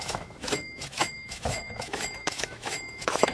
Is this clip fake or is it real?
fake